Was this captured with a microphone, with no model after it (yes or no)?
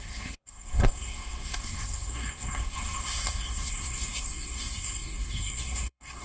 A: no